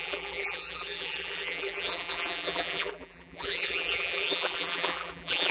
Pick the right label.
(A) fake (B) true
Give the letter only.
A